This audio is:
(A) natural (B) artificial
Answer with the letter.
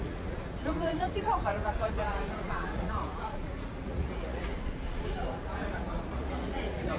B